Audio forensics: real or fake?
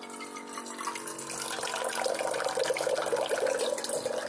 real